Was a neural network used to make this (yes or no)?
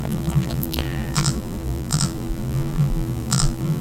yes